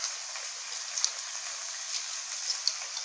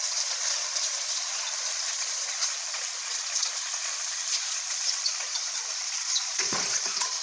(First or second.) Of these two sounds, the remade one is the second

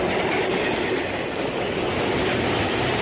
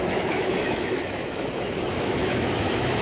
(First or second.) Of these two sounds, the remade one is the second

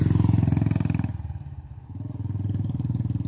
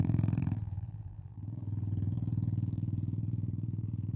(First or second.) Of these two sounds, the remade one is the second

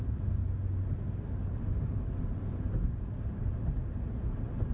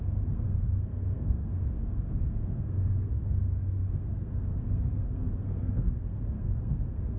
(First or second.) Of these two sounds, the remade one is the second